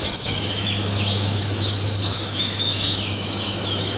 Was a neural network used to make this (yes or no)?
yes